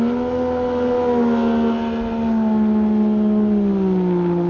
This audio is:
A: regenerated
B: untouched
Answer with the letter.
B